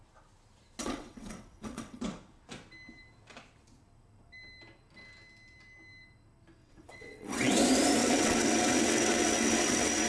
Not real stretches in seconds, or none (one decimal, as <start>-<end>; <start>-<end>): 0.8-2.0; 6.6-7.5; 8.0-10.1